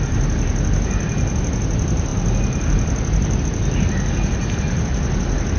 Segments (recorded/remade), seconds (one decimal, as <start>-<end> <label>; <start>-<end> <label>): 0.0-5.6 recorded